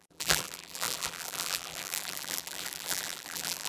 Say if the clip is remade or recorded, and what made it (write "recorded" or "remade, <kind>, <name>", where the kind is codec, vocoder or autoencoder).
remade, vocoder, BigVGAN v2